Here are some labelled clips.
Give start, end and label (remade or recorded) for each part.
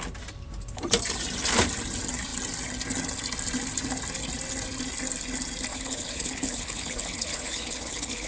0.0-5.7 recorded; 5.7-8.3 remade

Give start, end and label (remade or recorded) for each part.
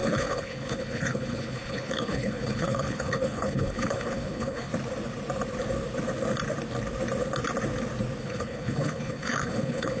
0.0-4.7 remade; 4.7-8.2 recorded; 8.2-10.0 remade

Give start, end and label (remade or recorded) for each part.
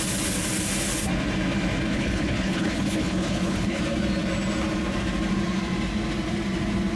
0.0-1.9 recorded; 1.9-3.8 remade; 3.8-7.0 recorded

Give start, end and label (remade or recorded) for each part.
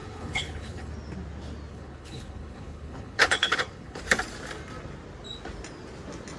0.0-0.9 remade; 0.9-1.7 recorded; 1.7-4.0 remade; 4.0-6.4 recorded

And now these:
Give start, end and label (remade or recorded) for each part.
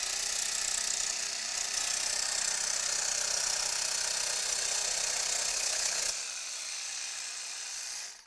0.0-5.5 recorded; 5.5-6.0 remade; 6.0-8.3 recorded